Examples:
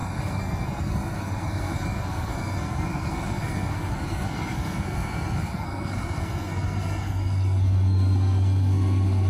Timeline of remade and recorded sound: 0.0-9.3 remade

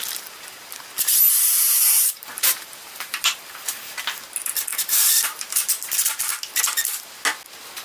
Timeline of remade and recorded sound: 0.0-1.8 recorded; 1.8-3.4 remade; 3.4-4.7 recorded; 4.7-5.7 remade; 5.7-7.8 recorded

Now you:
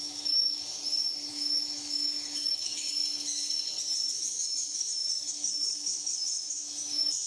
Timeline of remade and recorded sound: 0.0-0.7 remade; 0.7-1.3 recorded; 1.3-3.0 remade; 3.0-4.1 recorded; 4.1-7.3 remade

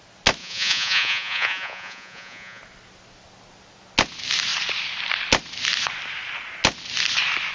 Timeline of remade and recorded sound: 0.0-0.4 recorded; 0.4-2.6 remade; 2.6-7.5 recorded

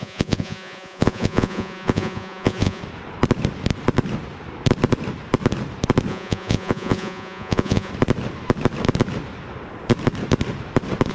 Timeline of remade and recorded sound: 0.0-2.8 remade; 2.8-6.1 recorded; 6.1-7.9 remade; 7.9-11.1 recorded

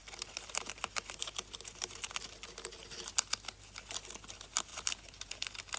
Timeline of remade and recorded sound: 0.0-3.2 remade; 3.2-4.7 recorded; 4.7-5.3 remade; 5.3-5.8 recorded

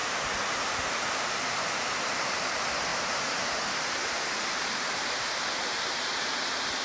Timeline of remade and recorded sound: 0.0-2.0 remade; 2.0-2.9 recorded; 2.9-5.3 remade; 5.3-6.8 recorded